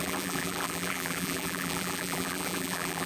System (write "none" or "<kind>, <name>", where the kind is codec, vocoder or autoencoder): vocoder, BigVGAN v2